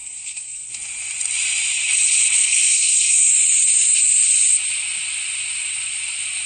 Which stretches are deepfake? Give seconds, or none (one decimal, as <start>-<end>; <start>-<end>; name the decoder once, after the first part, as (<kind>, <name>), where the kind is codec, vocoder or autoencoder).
0.0-0.7 (codec, SNAC); 2.4-3.3